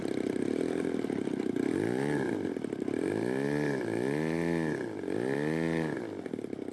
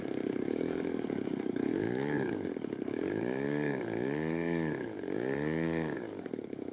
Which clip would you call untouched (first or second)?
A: first